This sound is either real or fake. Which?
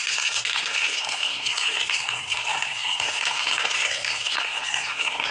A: fake